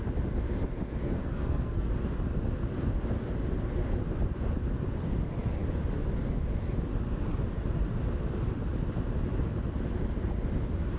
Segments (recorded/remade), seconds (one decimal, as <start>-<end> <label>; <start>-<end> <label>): 0.0-1.0 recorded; 1.0-1.9 remade; 1.9-11.0 recorded

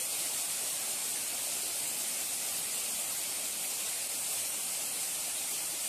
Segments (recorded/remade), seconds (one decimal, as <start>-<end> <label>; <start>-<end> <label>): 0.0-1.0 remade; 1.0-3.9 recorded; 3.9-5.9 remade

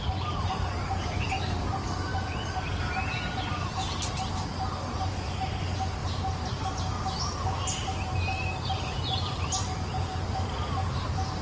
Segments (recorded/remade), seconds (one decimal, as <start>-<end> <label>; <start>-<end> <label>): 0.0-11.4 recorded

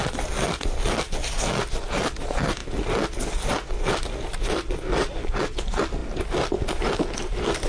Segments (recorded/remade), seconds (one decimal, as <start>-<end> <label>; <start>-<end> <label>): 0.0-7.7 recorded

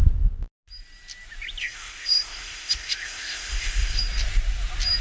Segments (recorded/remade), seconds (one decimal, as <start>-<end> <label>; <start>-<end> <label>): 0.0-1.6 recorded; 1.6-4.0 remade; 4.0-5.0 recorded